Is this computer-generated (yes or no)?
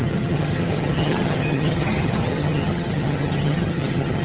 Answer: yes